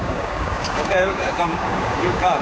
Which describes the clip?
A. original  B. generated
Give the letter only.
B